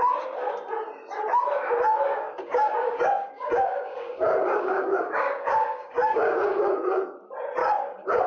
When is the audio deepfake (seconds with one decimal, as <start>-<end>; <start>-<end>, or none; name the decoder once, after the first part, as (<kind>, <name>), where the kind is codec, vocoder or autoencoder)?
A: 2.1-7.0 (codec, DAC); 7.6-8.3